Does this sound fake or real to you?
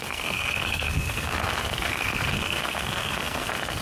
fake